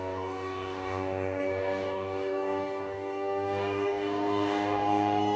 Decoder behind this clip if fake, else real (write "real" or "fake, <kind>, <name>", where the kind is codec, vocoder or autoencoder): fake, codec, DAC